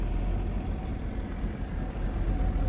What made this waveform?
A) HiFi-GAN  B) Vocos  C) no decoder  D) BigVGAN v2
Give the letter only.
C